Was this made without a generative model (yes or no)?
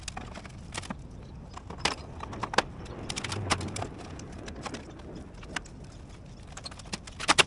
yes